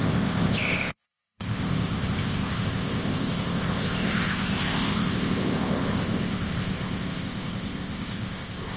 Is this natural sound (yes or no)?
no